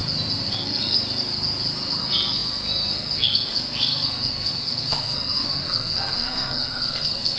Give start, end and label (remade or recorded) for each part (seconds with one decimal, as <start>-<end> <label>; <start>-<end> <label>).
0.0-0.5 recorded; 0.5-1.0 remade; 1.0-2.0 recorded; 2.0-7.4 remade